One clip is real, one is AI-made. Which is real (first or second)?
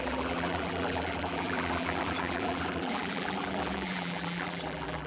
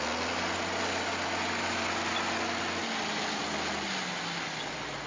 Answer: second